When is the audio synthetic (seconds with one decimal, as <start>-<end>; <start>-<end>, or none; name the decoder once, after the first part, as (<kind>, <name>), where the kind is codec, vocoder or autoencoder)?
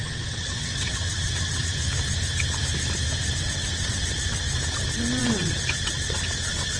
0.0-1.8 (vocoder, WaveNeXt); 3.4-4.5; 5.2-6.8